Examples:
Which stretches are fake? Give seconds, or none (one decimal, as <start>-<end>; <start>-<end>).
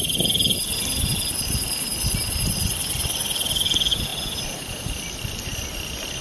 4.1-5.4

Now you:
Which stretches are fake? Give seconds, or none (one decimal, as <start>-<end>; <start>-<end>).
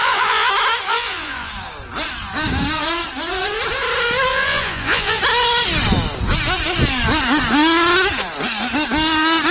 0.0-0.5; 0.9-1.5; 4.3-5.2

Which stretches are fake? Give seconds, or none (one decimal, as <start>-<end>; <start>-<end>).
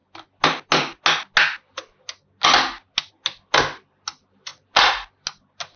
none